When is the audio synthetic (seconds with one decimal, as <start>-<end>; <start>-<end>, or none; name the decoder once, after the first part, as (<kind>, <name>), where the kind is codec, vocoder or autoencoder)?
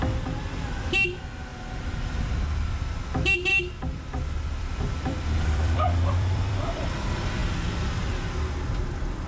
1.5-2.1 (vocoder, BigVGAN v2); 3.5-6.8